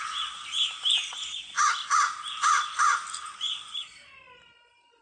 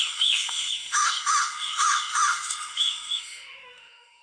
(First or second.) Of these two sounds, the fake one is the second